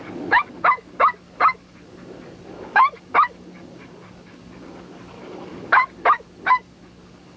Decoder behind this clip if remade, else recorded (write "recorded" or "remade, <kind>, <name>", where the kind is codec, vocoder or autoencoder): remade, codec, DAC